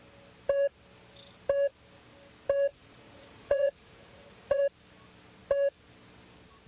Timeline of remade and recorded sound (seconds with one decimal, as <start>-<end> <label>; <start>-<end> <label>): 0.0-2.7 recorded; 2.7-4.6 remade; 4.6-6.7 recorded